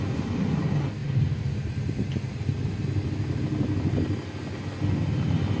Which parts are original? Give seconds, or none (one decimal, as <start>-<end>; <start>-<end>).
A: 0.0-5.6